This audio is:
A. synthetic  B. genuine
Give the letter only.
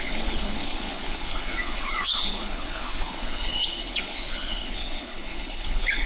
A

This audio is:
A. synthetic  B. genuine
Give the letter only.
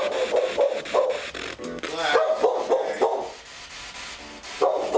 B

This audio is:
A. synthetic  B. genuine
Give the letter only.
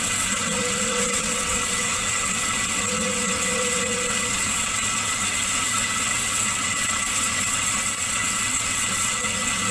A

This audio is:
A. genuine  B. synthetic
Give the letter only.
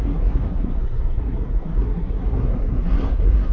B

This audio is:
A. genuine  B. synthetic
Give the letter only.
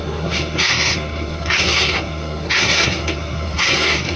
B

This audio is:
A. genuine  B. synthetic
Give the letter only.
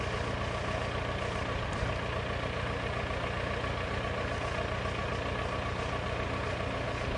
A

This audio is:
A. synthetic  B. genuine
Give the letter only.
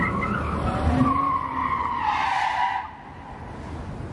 B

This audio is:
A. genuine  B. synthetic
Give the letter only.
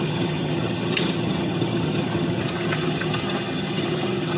B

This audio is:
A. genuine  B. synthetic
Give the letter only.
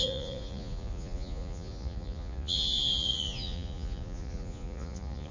B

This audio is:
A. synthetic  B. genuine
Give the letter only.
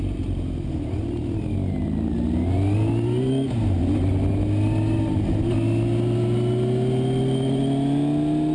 B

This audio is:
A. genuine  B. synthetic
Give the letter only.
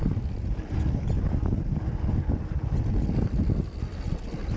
A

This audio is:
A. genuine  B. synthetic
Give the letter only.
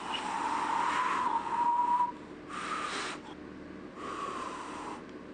A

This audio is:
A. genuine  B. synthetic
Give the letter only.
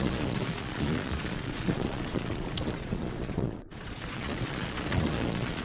B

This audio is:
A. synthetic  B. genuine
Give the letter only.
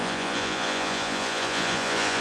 A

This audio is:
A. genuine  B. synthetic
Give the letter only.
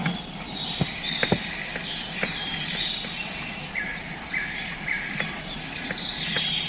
A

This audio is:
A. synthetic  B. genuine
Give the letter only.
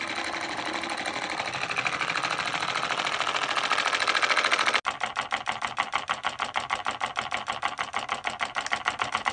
B